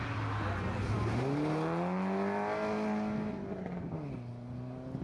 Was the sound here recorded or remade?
recorded